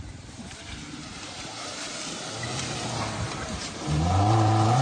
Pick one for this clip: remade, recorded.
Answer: remade